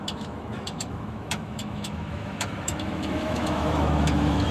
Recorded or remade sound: remade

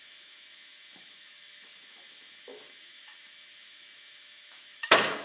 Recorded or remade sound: remade